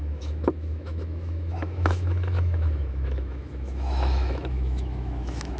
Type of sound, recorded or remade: remade